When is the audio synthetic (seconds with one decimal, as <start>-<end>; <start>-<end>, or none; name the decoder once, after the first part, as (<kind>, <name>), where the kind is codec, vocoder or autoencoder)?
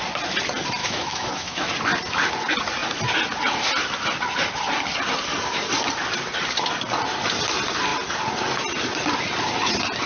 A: 0.8-1.7 (autoencoder, DAC-VAE)